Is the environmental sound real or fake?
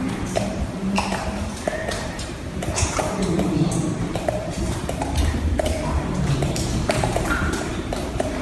fake